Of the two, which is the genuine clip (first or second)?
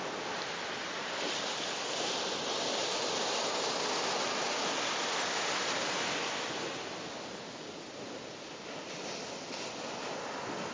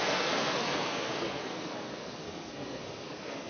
first